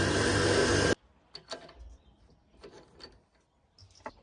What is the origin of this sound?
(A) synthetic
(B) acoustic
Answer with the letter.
B